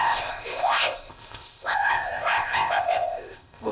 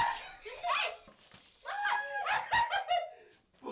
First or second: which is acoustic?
second